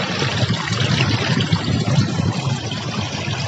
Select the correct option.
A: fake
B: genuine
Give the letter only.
B